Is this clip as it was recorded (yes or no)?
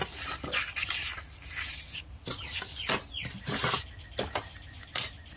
yes